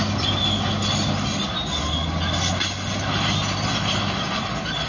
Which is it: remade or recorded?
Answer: recorded